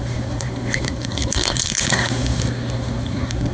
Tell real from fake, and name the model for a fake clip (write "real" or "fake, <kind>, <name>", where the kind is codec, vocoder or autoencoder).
fake, codec, SNAC